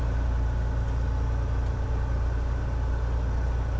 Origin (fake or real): real